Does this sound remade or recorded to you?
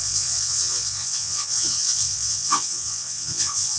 remade